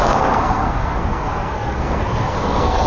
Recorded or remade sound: remade